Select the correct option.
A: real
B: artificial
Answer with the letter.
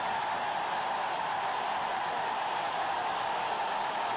A